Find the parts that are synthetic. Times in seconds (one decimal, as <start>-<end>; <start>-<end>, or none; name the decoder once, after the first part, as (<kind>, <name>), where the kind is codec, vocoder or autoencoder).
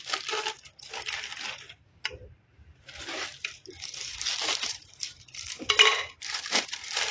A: 3.3-7.1 (vocoder, BigVGAN v2)